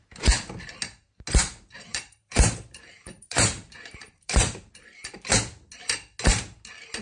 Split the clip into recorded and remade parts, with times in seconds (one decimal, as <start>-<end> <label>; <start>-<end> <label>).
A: 0.0-1.9 recorded; 1.9-5.3 remade; 5.3-7.0 recorded